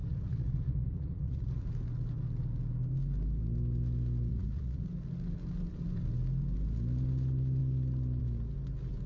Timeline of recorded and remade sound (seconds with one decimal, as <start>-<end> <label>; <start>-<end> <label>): 0.0-1.7 remade; 1.7-4.3 recorded; 4.3-4.9 remade; 4.9-9.1 recorded